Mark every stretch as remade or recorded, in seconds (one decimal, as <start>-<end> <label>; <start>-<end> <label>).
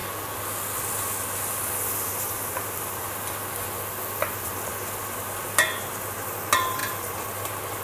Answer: 0.0-6.8 recorded; 6.8-7.3 remade; 7.3-7.8 recorded